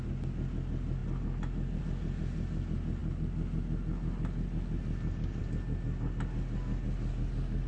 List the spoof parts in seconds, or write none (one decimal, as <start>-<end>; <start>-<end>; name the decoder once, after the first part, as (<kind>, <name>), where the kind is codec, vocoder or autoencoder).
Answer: none